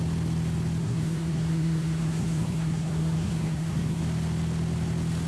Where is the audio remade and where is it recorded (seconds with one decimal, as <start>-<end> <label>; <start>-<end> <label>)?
0.0-0.8 recorded; 0.8-4.0 remade; 4.0-5.3 recorded